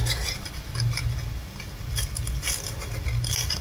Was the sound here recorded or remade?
recorded